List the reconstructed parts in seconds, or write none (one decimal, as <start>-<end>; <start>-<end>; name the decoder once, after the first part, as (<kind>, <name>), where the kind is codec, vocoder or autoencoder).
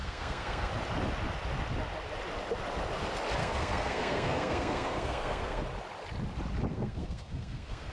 0.0-0.7 (codec, SNAC); 3.4-5.6; 6.7-7.9